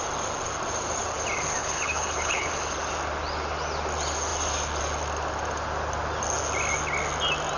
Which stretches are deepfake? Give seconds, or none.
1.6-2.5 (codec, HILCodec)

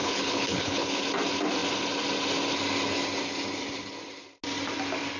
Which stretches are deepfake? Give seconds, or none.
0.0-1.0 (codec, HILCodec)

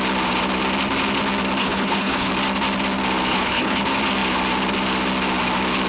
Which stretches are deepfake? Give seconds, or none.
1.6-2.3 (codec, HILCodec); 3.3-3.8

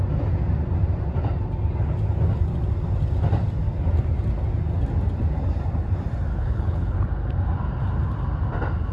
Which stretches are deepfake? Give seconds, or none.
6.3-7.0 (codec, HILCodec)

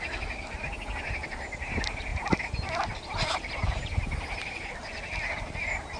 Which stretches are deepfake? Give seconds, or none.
none

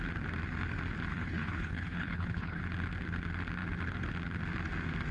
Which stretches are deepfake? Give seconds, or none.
1.1-2.6 (codec, HILCodec)

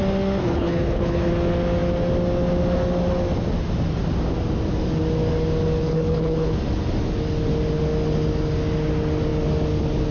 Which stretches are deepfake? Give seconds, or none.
0.4-1.3 (codec, HILCodec); 5.8-6.6